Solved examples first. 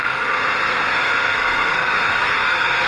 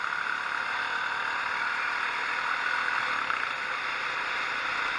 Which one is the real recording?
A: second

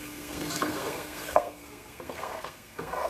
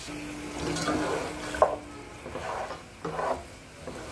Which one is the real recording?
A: second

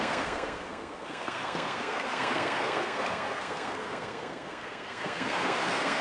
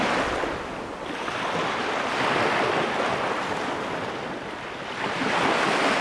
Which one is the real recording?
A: second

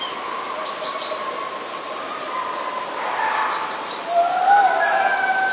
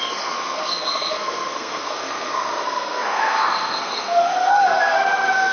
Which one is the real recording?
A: first